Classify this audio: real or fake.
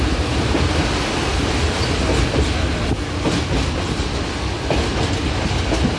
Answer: real